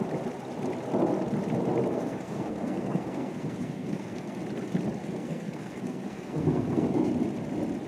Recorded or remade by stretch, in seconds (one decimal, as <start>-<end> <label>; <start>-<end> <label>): 0.0-1.9 recorded; 1.9-4.4 remade; 4.4-5.0 recorded; 5.0-7.1 remade; 7.1-7.9 recorded